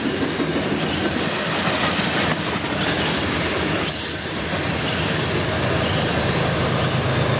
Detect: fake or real real